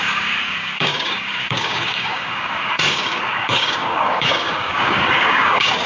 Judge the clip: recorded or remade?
remade